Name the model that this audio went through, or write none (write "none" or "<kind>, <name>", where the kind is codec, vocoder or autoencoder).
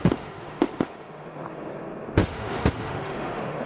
autoencoder, DAC-VAE